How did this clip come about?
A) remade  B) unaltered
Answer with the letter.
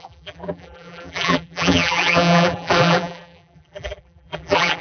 A